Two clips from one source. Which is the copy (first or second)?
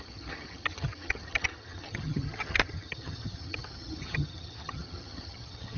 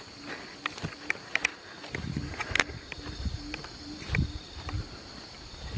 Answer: first